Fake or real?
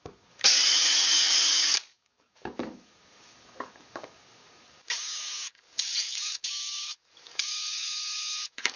fake